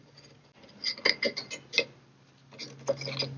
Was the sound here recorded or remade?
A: recorded